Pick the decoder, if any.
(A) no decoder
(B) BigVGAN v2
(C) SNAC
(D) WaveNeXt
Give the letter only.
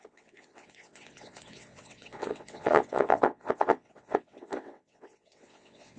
D